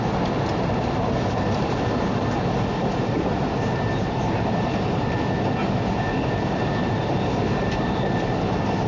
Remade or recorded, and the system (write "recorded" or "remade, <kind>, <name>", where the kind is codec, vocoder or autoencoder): recorded